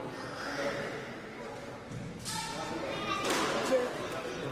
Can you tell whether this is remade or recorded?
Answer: recorded